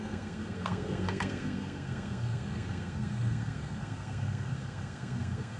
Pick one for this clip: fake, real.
fake